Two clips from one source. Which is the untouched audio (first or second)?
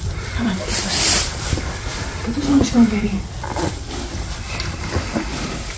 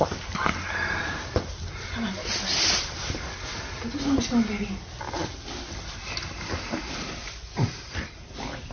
second